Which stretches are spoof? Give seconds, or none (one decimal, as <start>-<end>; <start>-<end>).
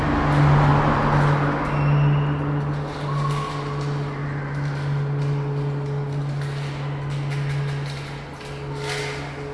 none